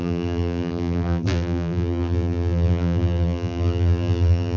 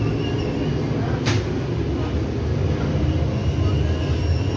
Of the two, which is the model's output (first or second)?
first